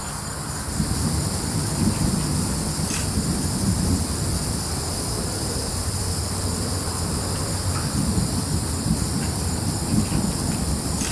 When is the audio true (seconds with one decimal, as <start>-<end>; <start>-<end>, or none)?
0.0-0.7